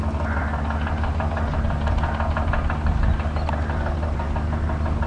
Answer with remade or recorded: recorded